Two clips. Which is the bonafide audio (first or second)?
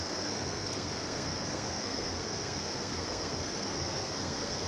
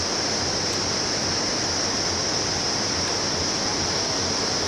second